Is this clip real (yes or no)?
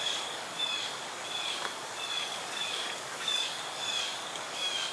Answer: no